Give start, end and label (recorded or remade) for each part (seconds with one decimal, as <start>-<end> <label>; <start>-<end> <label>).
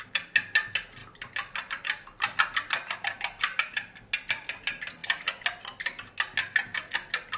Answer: 0.0-7.4 recorded